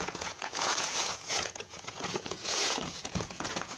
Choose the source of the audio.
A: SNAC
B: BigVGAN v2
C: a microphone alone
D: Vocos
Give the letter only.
D